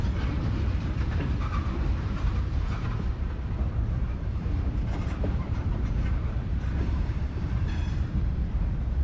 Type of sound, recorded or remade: remade